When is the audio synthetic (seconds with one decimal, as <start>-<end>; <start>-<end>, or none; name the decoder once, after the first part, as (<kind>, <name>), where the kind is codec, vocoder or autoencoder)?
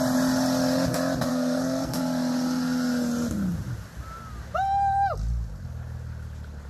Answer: 1.3-2.0 (codec, SNAC)